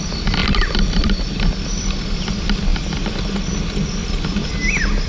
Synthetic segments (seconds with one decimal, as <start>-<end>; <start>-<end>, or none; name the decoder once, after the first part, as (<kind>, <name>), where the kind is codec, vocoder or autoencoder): 0.4-2.3 (vocoder, BigVGAN v2); 2.7-3.5; 4.0-4.5